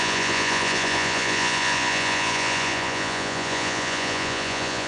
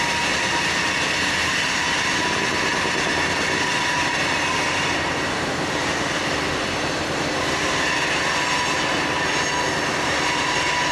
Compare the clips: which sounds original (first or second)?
second